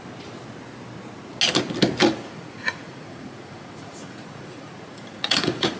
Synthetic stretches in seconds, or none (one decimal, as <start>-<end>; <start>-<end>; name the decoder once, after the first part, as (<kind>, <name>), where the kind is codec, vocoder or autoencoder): 2.0-5.8 (vocoder, Vocos)

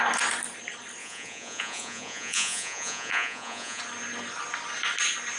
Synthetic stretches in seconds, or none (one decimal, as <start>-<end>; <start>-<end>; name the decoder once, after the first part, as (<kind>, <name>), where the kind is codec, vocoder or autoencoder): 1.0-3.8 (vocoder, Vocos)

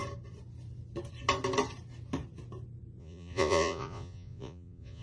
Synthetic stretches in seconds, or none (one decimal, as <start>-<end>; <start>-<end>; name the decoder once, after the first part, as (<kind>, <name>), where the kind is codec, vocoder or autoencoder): 3.0-5.0 (vocoder, Vocos)

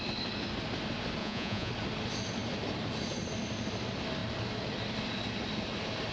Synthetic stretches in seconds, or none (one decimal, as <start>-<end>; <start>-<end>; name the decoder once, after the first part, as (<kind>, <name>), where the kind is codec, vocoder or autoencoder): 1.2-1.7 (vocoder, Vocos)

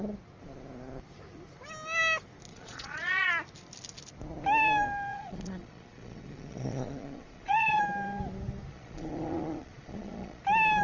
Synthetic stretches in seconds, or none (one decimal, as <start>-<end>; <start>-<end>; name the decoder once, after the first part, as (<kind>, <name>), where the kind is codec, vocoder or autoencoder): 2.5-3.3 (vocoder, Vocos); 5.1-7.8; 8.7-10.4

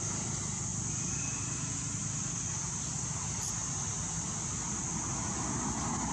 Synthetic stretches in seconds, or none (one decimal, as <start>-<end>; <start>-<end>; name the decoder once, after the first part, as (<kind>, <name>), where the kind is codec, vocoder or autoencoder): none

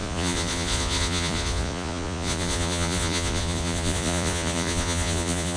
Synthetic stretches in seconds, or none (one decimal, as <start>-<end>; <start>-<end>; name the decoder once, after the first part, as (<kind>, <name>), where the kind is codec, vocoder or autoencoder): 0.0-5.6 (vocoder, Vocos)

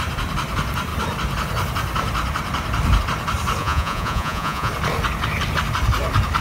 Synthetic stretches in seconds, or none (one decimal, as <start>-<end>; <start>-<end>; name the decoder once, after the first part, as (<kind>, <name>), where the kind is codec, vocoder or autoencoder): 3.6-4.7 (vocoder, Vocos)